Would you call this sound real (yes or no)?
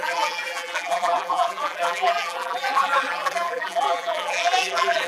no